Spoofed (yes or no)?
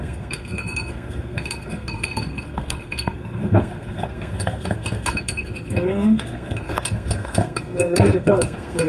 yes